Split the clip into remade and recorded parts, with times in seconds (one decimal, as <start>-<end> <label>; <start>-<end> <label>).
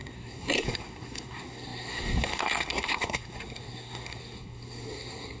0.0-5.4 remade